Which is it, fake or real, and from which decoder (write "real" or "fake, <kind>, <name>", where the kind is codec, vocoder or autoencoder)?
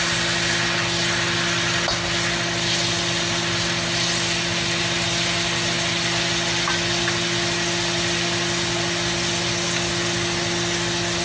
real